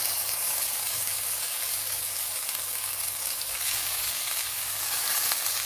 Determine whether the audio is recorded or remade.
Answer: remade